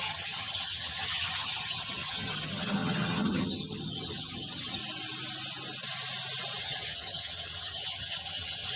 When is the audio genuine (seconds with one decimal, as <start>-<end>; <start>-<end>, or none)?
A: 4.8-6.6